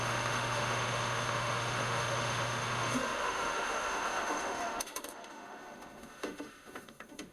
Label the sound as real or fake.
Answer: fake